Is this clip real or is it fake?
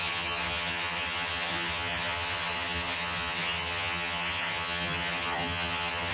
fake